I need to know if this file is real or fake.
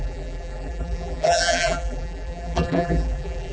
fake